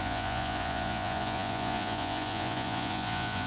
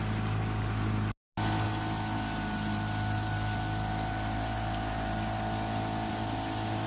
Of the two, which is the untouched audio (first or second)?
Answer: second